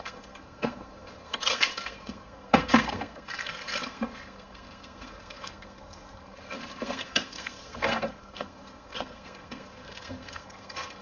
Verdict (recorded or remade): remade